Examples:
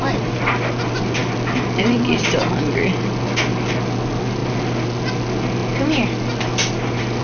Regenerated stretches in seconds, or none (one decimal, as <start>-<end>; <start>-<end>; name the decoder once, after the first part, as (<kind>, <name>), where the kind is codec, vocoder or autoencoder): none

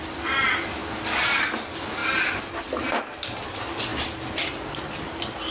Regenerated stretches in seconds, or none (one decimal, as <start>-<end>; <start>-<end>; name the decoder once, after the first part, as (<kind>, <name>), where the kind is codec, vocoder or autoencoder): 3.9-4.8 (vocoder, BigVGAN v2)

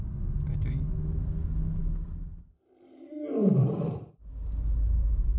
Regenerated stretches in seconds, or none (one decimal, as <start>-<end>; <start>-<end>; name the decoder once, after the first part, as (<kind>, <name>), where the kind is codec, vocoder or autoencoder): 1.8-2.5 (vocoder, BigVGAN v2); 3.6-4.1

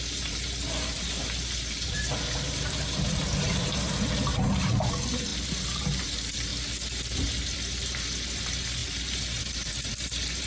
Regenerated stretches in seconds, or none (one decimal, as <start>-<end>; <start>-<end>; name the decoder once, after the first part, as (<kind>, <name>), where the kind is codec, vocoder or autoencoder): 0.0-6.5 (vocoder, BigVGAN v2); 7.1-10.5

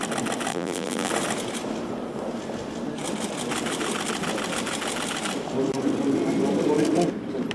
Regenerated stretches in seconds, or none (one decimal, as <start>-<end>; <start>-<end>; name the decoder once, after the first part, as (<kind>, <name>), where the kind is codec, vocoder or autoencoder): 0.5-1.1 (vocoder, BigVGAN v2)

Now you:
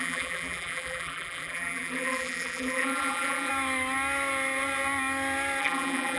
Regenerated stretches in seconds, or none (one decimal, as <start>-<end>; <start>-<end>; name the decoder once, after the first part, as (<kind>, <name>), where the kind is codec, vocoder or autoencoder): 0.0-3.5 (vocoder, BigVGAN v2); 5.6-6.2